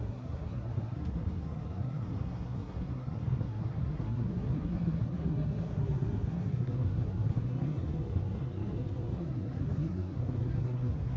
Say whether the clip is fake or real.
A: fake